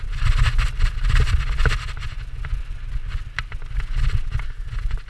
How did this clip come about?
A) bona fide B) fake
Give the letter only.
A